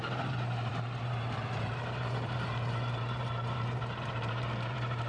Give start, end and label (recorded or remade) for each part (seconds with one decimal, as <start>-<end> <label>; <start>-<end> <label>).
0.0-5.1 remade